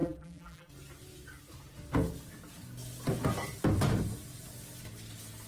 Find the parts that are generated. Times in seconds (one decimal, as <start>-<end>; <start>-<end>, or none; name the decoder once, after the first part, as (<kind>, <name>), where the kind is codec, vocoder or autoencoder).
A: 0.0-0.7 (vocoder, BigVGAN v2)